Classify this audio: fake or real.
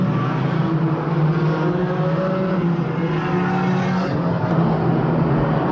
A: real